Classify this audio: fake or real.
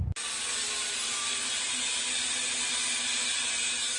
real